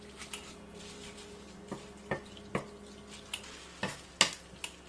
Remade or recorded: recorded